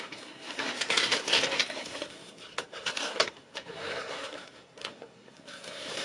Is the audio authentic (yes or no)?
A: no